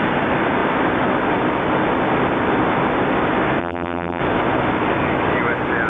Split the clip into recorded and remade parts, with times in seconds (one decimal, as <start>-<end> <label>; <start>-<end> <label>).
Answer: 0.0-3.6 recorded; 3.6-4.2 remade; 4.2-5.9 recorded